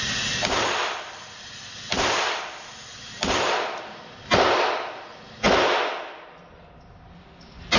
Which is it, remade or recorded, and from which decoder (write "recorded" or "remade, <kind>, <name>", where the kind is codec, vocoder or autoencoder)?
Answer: recorded